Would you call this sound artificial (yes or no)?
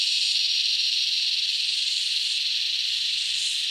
yes